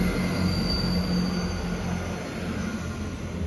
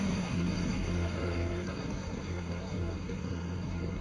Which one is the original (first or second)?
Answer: first